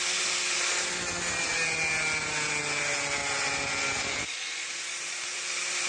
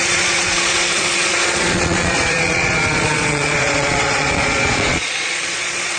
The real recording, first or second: first